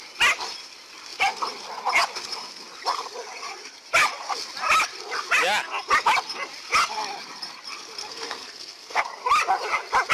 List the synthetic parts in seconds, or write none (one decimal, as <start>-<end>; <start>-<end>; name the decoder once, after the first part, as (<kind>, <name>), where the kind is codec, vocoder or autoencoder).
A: 8.0-9.0 (codec, SNAC)